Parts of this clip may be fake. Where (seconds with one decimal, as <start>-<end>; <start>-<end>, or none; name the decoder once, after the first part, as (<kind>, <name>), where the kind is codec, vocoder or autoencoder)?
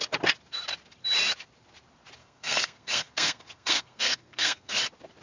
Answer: 2.2-4.8 (codec, SNAC)